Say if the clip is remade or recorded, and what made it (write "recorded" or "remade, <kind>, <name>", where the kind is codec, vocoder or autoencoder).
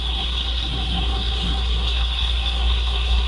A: remade, codec, SNAC